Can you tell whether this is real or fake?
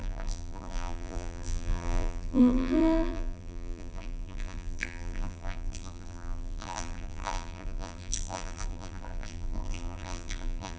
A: fake